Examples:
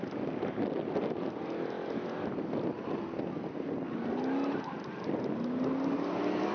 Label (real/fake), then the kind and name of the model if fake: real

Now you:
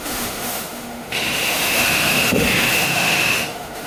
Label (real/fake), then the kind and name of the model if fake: fake, autoencoder, DAC-VAE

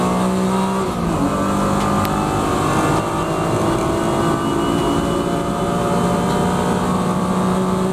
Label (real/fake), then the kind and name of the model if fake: real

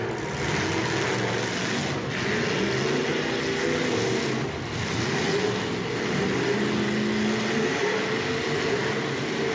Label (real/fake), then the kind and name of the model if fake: real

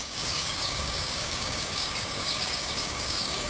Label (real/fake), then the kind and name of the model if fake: fake, codec, DAC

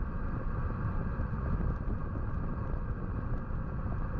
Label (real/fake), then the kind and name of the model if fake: real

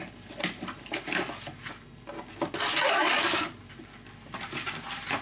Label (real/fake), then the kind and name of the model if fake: real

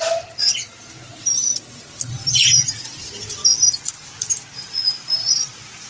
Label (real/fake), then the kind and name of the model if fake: real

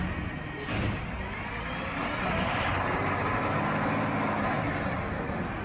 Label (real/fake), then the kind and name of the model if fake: real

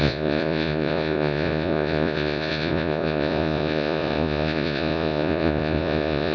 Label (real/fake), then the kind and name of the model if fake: fake, vocoder, Vocos